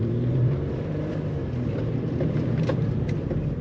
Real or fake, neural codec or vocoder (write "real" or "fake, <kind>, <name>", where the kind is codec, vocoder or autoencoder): fake, vocoder, BigVGAN v2